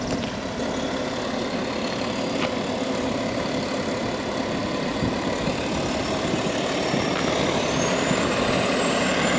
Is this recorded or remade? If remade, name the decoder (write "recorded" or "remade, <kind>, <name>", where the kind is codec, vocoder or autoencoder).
remade, vocoder, BigVGAN v2